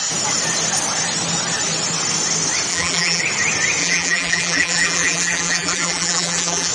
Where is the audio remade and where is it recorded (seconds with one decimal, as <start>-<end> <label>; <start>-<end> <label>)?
0.0-2.7 recorded; 2.7-3.2 remade; 3.2-3.8 recorded; 3.8-6.7 remade